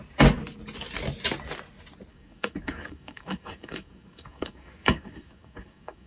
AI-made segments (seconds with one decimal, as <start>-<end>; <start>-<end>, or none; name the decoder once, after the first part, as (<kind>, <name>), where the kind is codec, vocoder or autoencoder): 2.1-6.1 (codec, DAC)

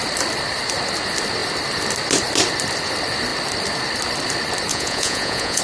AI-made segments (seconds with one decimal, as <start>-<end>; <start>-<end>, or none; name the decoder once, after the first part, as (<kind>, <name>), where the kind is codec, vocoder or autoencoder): 4.7-5.6 (vocoder, Vocos)

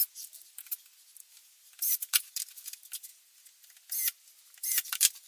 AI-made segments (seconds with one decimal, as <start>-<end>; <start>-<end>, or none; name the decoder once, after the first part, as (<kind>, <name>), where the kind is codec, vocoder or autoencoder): 1.4-2.2 (vocoder, BigVGAN v2)